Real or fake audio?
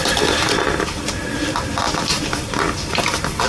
real